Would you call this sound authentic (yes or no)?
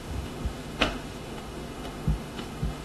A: no